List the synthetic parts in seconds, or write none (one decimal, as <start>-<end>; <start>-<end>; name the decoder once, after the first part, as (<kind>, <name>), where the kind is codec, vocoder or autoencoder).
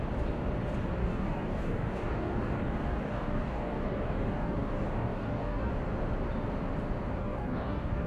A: 1.0-5.7 (codec, DAC); 7.2-8.1